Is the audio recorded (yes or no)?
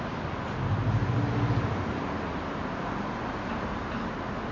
yes